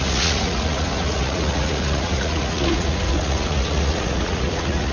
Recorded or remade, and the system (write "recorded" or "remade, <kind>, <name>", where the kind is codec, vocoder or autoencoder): remade, vocoder, Vocos